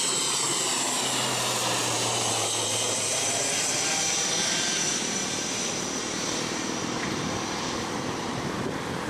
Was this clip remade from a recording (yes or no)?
yes